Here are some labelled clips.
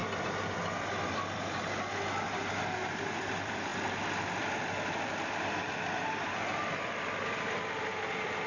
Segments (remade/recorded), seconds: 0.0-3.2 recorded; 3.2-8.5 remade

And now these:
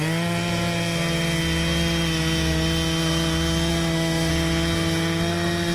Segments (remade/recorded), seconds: 0.0-3.7 recorded; 3.7-4.3 remade; 4.3-5.7 recorded

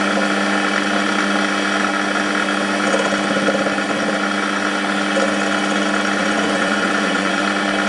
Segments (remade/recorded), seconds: 0.0-6.2 recorded; 6.2-7.4 remade; 7.4-7.9 recorded

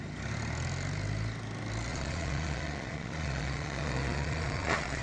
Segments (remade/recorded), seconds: 0.0-1.9 recorded; 1.9-5.0 remade

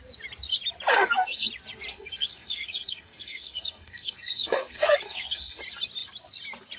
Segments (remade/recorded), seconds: 0.0-0.9 recorded; 0.9-1.5 remade; 1.5-1.9 recorded; 1.9-5.6 remade; 5.6-6.8 recorded